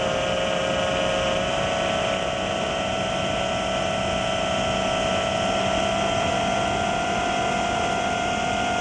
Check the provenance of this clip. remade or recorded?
recorded